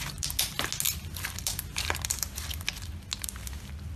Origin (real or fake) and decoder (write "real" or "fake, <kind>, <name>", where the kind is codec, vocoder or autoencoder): real